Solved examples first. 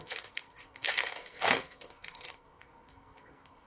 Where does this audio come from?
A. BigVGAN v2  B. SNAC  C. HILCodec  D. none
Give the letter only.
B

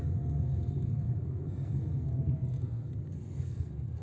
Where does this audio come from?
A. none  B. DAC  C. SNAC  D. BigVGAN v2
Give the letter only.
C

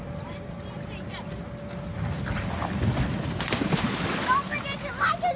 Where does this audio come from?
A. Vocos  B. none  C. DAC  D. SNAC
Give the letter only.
B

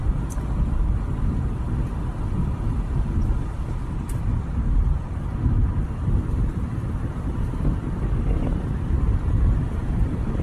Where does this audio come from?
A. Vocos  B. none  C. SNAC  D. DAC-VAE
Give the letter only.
B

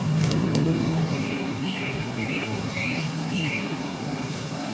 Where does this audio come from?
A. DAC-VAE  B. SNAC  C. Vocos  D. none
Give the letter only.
B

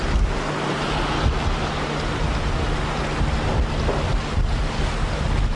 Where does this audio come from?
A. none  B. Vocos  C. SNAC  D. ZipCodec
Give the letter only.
A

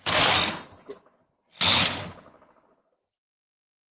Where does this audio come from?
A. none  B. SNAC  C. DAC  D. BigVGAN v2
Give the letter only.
A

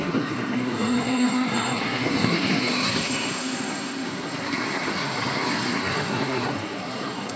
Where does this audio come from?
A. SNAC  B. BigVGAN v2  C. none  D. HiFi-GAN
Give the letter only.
A